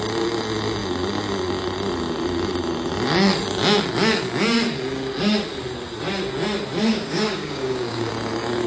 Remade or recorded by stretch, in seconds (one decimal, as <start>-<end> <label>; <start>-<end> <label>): 0.0-6.9 recorded; 6.9-8.1 remade; 8.1-8.7 recorded